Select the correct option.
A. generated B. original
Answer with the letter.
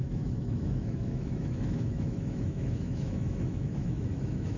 A